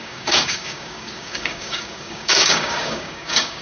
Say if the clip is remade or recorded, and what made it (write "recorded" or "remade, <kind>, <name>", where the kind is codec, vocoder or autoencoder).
remade, codec, DAC